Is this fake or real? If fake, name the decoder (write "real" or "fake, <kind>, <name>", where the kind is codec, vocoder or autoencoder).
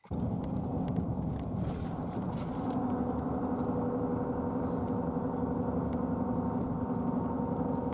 real